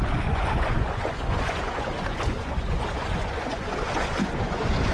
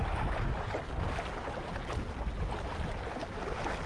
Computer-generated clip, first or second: first